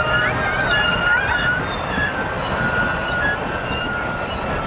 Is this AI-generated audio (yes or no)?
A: no